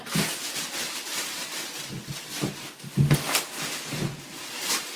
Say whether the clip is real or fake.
real